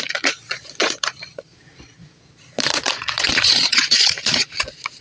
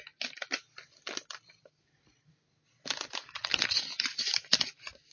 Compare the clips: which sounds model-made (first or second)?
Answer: first